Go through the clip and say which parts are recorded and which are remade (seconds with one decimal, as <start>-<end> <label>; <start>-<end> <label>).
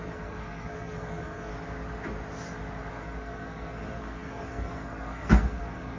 0.0-1.5 remade; 1.5-2.9 recorded; 2.9-6.0 remade